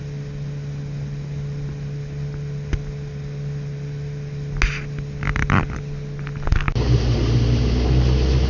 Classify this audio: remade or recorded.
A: recorded